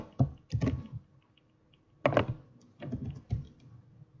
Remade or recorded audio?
recorded